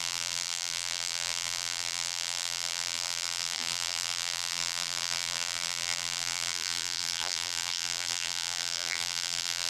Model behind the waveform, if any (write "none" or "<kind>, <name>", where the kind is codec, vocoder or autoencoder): vocoder, BigVGAN v2